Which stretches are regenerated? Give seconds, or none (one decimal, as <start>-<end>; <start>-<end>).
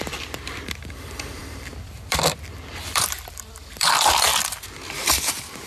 0.0-4.3; 5.1-5.7